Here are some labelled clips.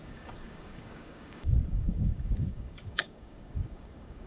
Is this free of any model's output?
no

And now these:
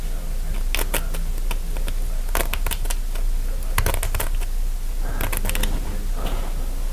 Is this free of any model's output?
yes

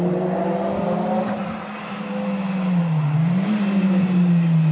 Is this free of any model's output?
yes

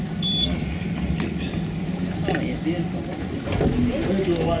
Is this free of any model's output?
yes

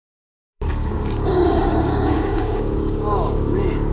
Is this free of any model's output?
no